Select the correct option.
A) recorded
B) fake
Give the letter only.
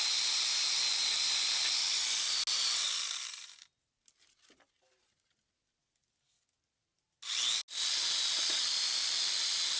A